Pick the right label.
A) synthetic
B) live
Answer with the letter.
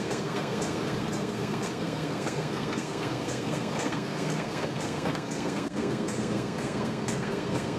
A